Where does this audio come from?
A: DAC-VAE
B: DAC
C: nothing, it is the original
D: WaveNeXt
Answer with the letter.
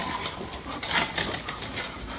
C